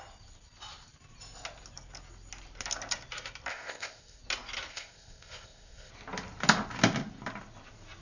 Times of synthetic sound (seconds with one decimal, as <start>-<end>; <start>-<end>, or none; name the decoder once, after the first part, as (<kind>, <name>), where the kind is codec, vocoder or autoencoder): 3.5-4.2 (codec, ZipCodec); 4.7-5.9

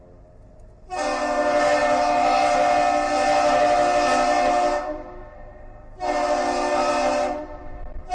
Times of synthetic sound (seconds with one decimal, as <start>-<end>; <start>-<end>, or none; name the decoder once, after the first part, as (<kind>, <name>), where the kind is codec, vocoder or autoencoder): none

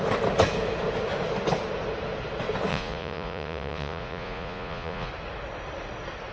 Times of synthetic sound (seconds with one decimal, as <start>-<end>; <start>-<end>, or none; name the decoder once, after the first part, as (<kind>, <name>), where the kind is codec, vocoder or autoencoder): 2.7-5.1 (vocoder, Vocos)

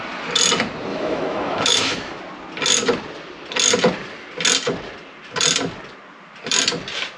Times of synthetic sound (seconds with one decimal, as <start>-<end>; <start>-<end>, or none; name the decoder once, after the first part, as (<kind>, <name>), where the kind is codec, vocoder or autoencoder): 0.9-2.2 (autoencoder, DAC-VAE)

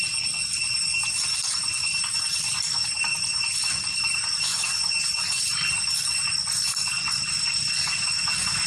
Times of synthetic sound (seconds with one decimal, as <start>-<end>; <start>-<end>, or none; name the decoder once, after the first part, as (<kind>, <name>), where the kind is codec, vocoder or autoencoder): none

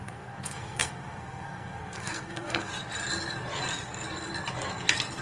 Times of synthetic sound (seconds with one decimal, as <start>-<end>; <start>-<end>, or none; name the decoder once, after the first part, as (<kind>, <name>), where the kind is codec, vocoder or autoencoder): 0.0-2.7 (codec, SNAC)

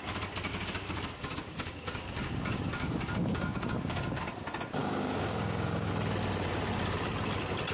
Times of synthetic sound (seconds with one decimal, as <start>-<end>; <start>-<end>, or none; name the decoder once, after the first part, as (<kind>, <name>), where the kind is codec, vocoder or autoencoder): 0.5-4.2 (codec, DAC); 4.8-5.9